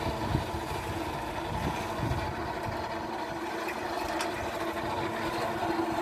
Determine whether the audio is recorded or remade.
recorded